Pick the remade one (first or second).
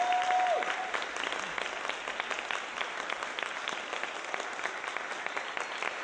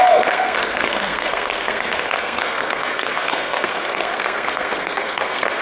second